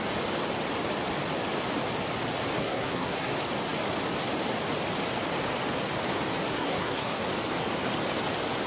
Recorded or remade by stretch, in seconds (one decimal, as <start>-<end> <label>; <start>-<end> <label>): 0.0-2.6 recorded; 2.6-3.3 remade; 3.3-6.5 recorded; 6.5-7.2 remade; 7.2-8.7 recorded